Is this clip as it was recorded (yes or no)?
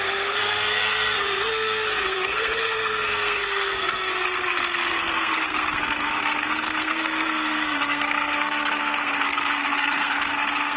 no